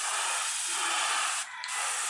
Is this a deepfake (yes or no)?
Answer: no